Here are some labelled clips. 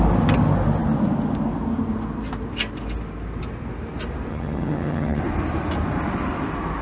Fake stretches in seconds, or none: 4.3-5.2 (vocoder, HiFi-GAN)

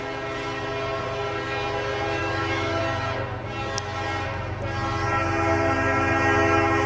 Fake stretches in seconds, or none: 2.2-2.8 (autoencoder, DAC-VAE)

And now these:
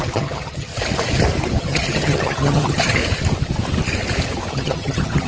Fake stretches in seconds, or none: 0.0-0.7 (vocoder, HiFi-GAN); 1.6-3.0; 4.5-5.3